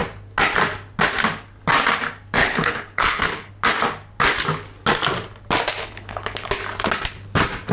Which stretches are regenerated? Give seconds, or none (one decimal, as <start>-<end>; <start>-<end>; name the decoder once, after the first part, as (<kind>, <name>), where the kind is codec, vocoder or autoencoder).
2.4-3.5 (codec, HILCodec); 5.8-6.5